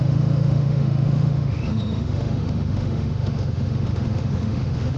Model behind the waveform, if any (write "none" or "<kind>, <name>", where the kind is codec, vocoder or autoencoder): autoencoder, DAC-VAE